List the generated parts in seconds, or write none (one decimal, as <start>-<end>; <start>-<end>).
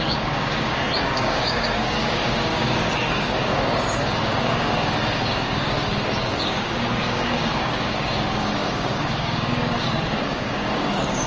0.0-11.3